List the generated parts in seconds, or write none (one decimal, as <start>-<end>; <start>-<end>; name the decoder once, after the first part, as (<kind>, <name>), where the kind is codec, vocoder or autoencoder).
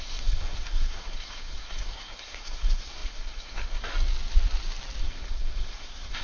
0.0-3.9 (codec, SNAC); 5.0-6.2